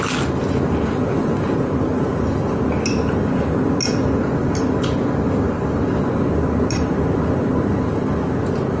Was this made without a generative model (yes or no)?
yes